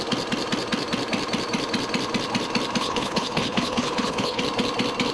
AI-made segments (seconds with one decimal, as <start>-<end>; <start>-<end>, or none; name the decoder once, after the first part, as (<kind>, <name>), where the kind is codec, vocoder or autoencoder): 2.8-4.4 (codec, HILCodec)